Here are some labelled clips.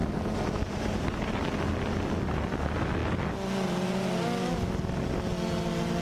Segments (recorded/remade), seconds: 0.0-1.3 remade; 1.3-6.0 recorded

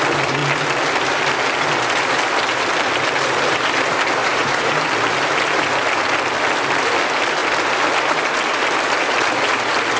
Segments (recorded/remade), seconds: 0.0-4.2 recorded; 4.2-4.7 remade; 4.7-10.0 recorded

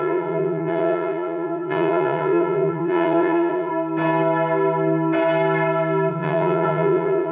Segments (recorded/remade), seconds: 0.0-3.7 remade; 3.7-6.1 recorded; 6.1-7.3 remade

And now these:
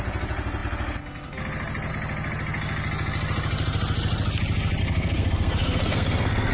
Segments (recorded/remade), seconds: 0.0-4.8 recorded; 4.8-6.5 remade

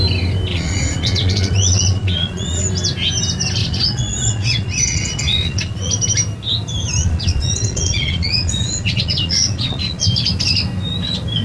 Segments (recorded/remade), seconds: 0.0-0.5 recorded; 0.5-2.6 remade; 2.6-3.6 recorded; 3.6-5.9 remade; 5.9-7.0 recorded; 7.0-10.0 remade; 10.0-11.4 recorded

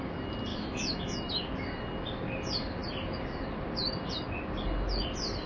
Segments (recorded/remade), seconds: 0.0-0.5 recorded; 0.5-1.3 remade; 1.3-5.5 recorded

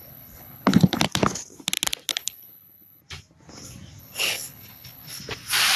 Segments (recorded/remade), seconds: 0.0-1.0 remade; 1.0-2.1 recorded; 2.1-3.0 remade; 3.0-4.0 recorded; 4.0-5.2 remade; 5.2-5.8 recorded